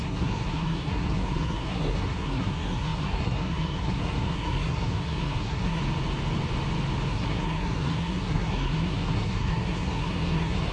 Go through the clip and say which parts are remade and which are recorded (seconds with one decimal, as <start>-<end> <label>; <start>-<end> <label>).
0.0-5.8 remade; 5.8-7.1 recorded; 7.1-10.7 remade